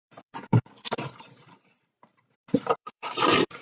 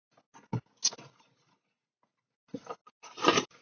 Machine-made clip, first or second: first